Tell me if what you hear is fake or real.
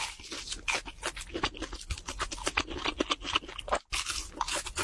real